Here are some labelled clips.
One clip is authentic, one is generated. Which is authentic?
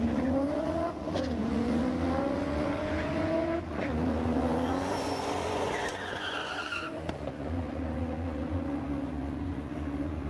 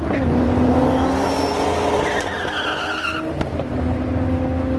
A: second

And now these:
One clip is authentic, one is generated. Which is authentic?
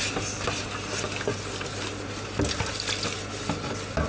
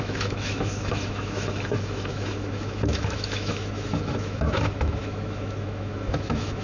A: first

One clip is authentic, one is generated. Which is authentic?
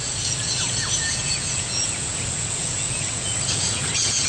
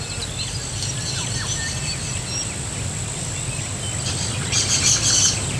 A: second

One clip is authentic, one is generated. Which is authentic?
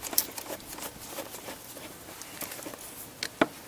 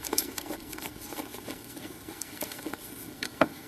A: first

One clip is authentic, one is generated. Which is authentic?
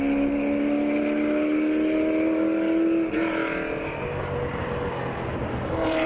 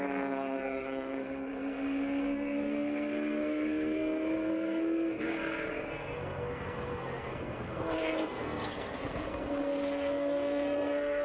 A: first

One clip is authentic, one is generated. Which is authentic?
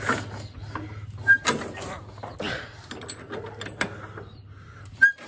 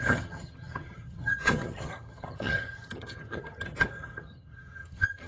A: first